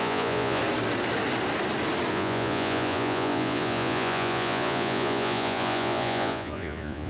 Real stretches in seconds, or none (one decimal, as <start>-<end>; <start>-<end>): 0.6-2.1